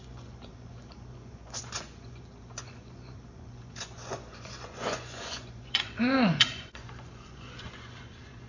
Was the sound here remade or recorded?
remade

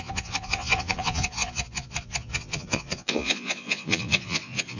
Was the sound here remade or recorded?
remade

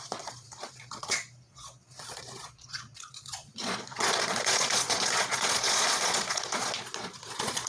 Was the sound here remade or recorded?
remade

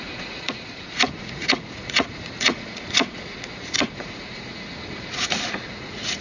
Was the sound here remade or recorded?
remade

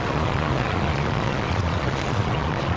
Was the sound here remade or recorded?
remade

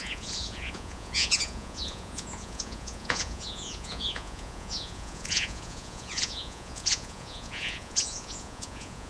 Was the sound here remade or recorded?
remade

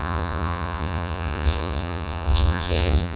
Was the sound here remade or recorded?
remade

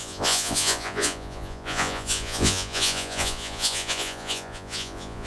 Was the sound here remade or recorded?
remade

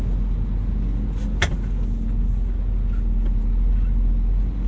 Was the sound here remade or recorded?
recorded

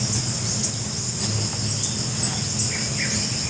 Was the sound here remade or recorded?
recorded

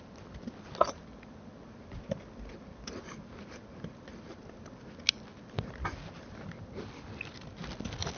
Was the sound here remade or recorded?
recorded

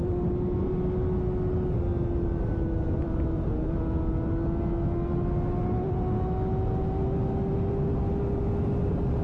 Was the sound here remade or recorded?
recorded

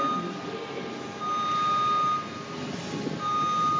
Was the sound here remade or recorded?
recorded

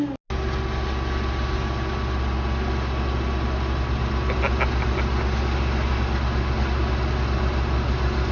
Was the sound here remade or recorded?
recorded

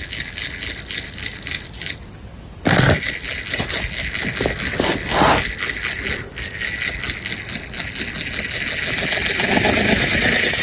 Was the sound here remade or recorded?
recorded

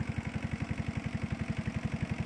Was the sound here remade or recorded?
recorded